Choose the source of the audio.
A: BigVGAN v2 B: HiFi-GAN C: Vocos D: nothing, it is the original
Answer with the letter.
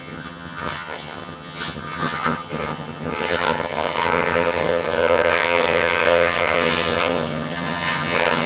B